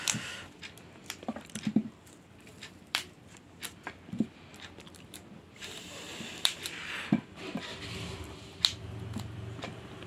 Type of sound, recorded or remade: remade